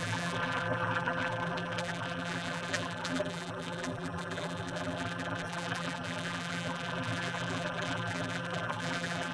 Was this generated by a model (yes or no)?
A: yes